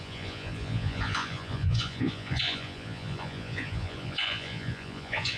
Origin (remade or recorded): remade